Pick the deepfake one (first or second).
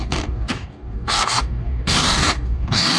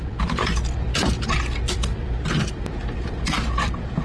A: first